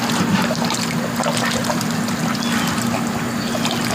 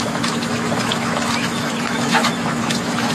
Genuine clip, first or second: first